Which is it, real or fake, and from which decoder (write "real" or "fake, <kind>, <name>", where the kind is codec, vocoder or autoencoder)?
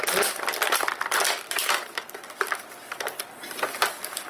fake, vocoder, BigVGAN v2